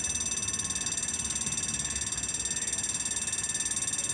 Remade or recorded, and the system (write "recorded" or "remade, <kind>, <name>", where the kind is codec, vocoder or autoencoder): recorded